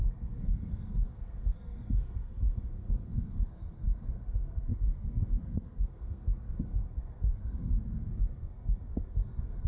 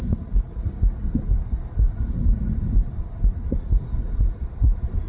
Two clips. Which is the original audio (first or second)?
second